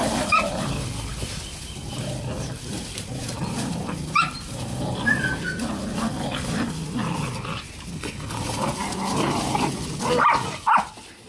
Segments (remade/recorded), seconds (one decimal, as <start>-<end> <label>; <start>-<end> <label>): 0.0-7.9 recorded; 7.9-8.6 remade; 8.6-11.3 recorded